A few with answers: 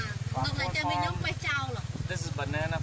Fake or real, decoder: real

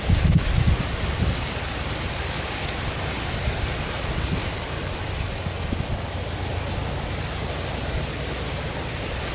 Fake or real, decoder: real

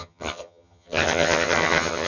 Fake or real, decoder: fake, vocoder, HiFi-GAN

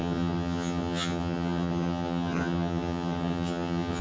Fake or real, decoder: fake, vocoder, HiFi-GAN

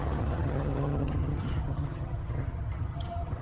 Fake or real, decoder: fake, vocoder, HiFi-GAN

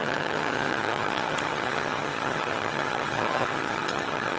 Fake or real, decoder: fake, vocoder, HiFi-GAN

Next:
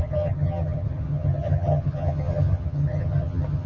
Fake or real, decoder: fake, vocoder, HiFi-GAN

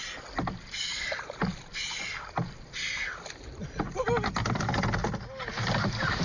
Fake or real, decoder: real